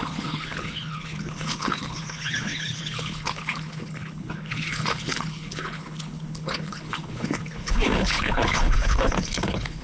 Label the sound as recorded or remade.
remade